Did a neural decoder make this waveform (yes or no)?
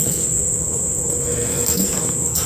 yes